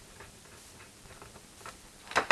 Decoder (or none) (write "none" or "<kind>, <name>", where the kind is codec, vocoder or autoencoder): vocoder, BigVGAN v2